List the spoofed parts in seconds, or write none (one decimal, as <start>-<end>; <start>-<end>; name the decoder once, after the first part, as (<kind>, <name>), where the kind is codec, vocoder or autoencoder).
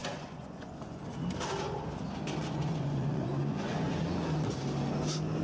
0.0-1.0 (vocoder, Vocos); 2.4-4.0